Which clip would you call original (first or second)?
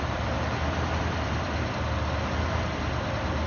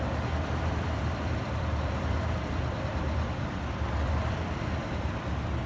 first